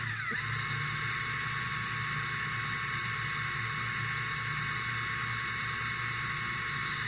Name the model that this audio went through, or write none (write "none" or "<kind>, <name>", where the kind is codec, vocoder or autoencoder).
none